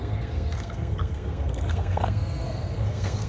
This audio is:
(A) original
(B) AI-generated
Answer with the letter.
B